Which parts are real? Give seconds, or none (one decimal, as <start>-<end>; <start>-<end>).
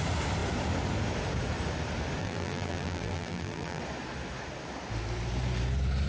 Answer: 0.0-2.2; 3.8-6.1